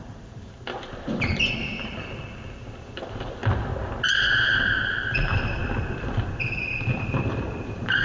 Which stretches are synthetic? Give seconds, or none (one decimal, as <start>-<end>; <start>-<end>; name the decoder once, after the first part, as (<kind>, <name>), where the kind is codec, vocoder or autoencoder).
0.0-3.4 (vocoder, BigVGAN v2); 5.1-8.0